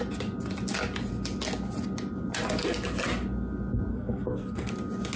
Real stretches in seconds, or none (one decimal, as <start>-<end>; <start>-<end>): 0.0-3.9; 4.7-5.2